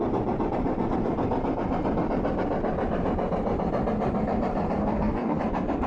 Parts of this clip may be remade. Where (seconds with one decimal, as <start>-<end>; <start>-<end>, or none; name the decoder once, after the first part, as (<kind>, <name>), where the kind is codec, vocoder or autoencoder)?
4.8-5.4 (codec, DAC)